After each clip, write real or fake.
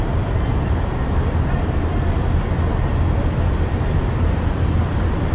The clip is real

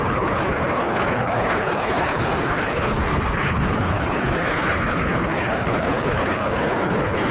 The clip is fake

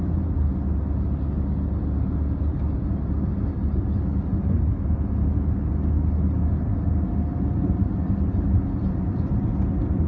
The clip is real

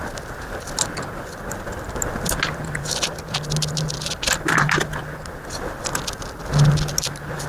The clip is real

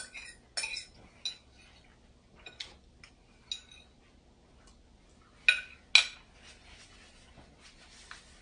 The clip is real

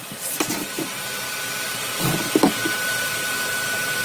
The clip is real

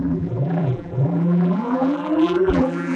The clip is fake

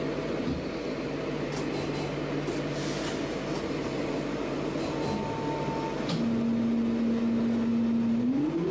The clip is real